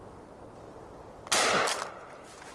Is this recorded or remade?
recorded